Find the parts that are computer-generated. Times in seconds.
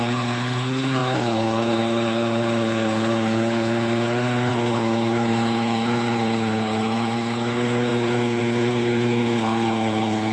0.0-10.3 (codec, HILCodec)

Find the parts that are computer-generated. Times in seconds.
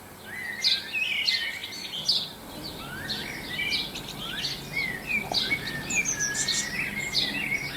1.6-2.8 (vocoder, BigVGAN v2); 3.2-3.7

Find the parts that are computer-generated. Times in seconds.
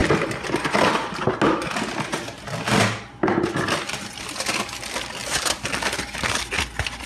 none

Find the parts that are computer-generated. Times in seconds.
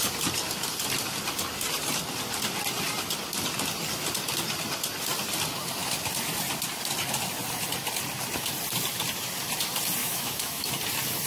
10.0-10.7 (autoencoder, DAC-VAE)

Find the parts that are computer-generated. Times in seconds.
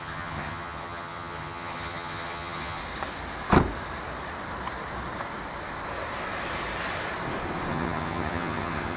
0.0-2.8 (vocoder, HiFi-GAN); 7.7-9.0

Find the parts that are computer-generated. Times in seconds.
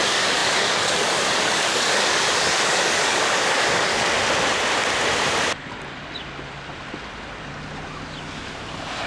0.0-3.9 (codec, DAC)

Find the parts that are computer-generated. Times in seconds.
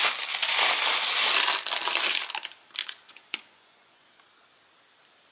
2.8-4.1 (vocoder, Vocos)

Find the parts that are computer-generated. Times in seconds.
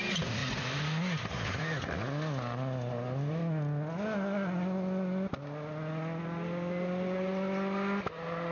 none